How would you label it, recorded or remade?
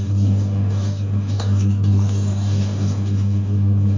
remade